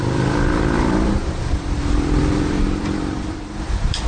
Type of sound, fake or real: fake